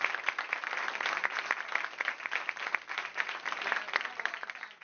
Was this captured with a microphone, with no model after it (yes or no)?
yes